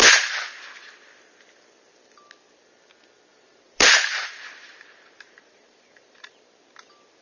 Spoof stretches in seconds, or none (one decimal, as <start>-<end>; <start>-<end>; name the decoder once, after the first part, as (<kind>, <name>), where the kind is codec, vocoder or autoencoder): 3.3-6.4 (vocoder, BigVGAN v2)

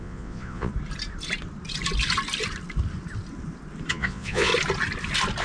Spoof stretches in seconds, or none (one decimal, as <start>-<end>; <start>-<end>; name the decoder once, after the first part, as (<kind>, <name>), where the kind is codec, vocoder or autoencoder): 0.0-0.7 (vocoder, Vocos); 3.9-4.5

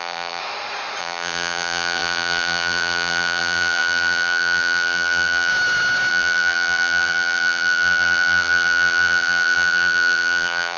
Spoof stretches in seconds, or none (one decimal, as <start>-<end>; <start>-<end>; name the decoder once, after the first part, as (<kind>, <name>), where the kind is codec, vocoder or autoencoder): 0.0-0.4 (vocoder, BigVGAN v2); 1.0-5.5; 6.1-10.8

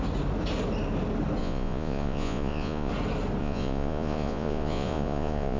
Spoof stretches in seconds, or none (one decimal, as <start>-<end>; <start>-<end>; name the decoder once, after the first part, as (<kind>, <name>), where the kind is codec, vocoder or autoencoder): 1.4-2.9 (vocoder, Vocos); 3.4-5.6

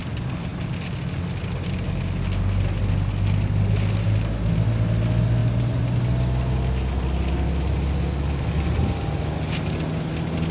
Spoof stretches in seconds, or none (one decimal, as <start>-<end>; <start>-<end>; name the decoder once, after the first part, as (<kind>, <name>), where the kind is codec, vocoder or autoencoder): none

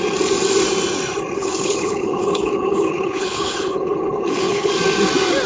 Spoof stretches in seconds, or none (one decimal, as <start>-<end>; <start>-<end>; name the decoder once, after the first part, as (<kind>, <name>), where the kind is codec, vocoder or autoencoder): 1.4-4.7 (codec, HILCodec)